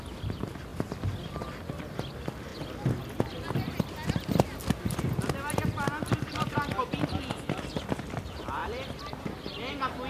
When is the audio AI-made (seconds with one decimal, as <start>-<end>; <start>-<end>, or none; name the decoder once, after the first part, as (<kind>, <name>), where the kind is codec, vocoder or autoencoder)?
0.0-0.7 (vocoder, BigVGAN v2); 1.7-2.5; 6.1-10.1

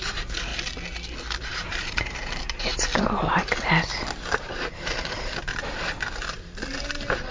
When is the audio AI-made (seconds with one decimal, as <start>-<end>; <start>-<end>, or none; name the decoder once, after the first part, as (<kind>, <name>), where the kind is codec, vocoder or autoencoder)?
0.0-0.5 (vocoder, BigVGAN v2); 1.4-2.7; 4.4-5.5

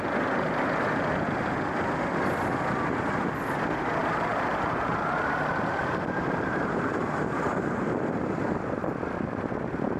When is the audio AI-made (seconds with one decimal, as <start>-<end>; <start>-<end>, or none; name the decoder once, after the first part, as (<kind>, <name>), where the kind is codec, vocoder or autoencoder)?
4.0-8.7 (vocoder, BigVGAN v2)

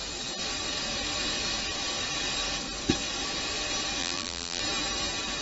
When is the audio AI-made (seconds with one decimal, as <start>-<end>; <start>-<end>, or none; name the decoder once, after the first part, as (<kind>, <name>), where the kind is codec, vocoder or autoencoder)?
4.0-4.6 (vocoder, BigVGAN v2)

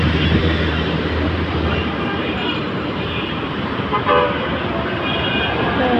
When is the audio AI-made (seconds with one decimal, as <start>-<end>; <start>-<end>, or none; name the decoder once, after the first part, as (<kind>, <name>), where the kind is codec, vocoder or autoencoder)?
0.4-4.0 (vocoder, BigVGAN v2)

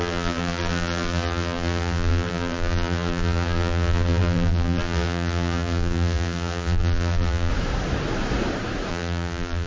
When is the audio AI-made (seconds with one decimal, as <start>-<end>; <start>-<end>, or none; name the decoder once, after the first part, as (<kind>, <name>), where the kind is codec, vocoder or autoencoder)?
0.0-7.5 (vocoder, BigVGAN v2); 8.9-9.7

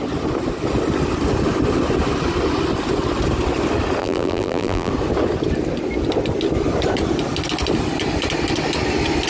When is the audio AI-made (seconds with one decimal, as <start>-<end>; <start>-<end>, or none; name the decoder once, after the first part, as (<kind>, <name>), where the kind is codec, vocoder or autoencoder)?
4.0-4.9 (vocoder, BigVGAN v2)